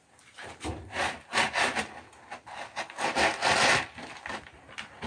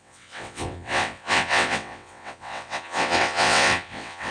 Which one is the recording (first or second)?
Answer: first